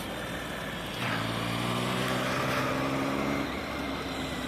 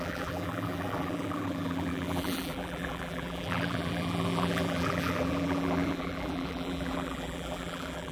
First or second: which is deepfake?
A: second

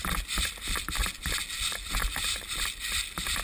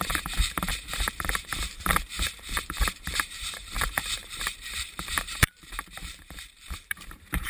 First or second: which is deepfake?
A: second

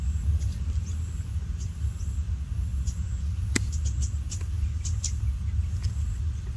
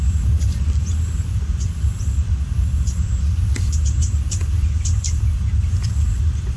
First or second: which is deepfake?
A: second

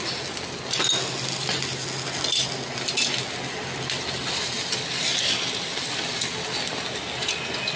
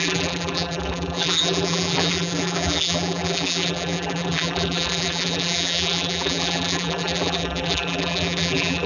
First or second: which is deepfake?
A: second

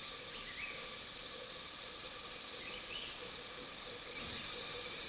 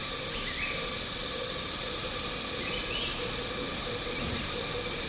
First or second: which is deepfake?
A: first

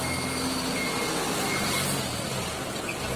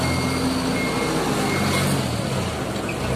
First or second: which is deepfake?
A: first